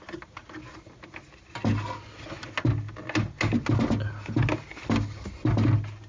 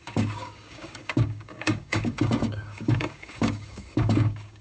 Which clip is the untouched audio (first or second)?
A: first